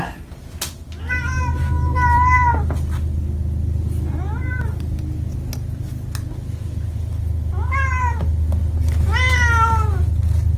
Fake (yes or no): no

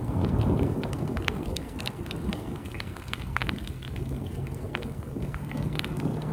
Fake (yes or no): yes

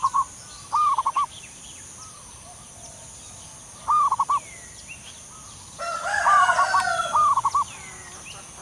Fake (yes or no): no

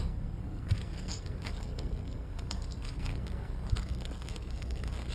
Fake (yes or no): yes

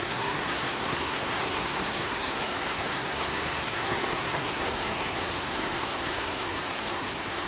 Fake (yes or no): yes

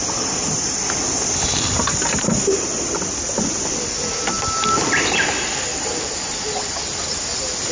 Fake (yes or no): no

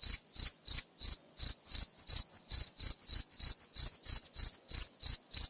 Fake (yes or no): yes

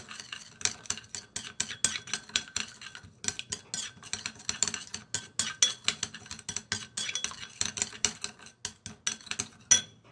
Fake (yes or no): no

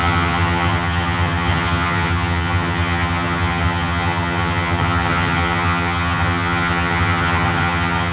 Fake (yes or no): yes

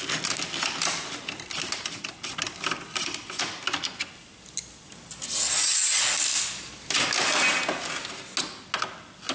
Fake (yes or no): no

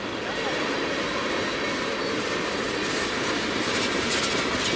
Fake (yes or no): no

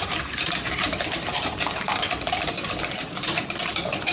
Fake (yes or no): yes